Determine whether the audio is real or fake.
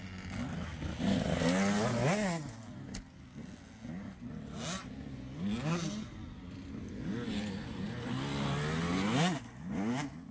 real